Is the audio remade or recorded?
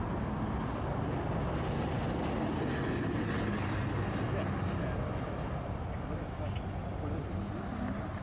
recorded